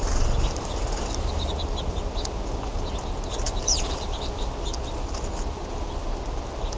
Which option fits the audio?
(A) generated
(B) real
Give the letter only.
B